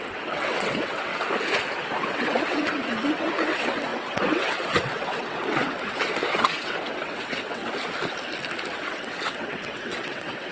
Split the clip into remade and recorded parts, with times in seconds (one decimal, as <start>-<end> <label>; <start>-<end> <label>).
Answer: 0.0-1.1 remade; 1.1-2.1 recorded; 2.1-7.6 remade; 7.6-8.8 recorded; 8.8-10.5 remade